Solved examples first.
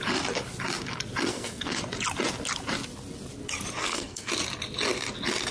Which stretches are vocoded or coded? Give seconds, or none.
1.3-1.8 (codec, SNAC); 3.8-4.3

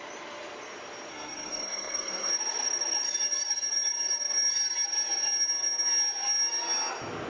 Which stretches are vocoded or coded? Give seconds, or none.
1.1-2.3 (codec, SNAC)

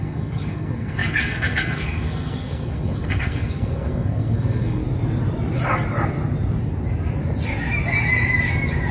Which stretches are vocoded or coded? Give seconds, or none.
0.0-4.8 (codec, SNAC)

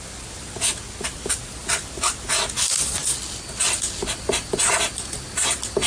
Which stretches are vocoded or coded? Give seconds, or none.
none